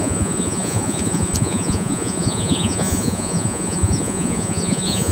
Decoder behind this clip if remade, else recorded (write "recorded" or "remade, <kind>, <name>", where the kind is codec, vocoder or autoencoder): remade, vocoder, Vocos